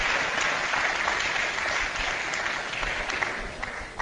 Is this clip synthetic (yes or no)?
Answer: no